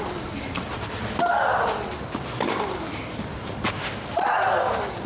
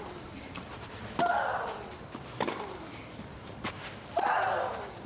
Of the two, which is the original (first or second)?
first